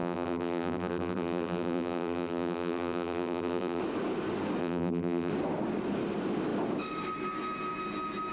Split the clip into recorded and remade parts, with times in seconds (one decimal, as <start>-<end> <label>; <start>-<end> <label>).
0.0-3.8 remade; 3.8-4.6 recorded; 4.6-5.3 remade; 5.3-8.3 recorded